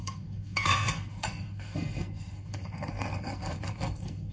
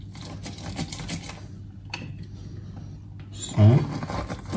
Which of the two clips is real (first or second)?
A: second